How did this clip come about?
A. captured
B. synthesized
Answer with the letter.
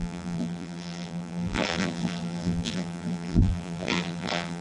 B